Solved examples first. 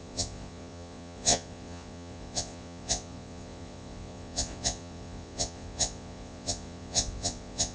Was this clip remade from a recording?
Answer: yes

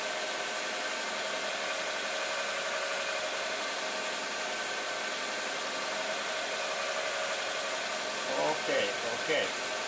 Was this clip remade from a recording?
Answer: no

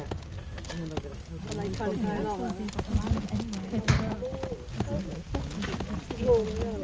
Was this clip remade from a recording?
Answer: no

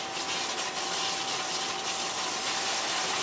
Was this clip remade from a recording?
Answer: no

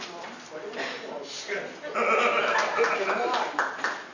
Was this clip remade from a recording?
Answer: no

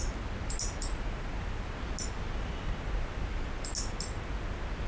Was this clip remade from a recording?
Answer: no